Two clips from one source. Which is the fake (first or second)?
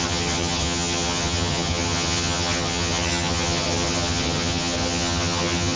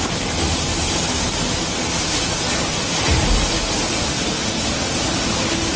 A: first